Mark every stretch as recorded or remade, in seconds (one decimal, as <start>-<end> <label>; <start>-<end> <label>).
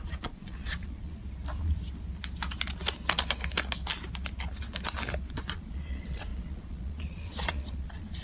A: 0.0-1.2 remade; 1.2-5.3 recorded; 5.3-8.2 remade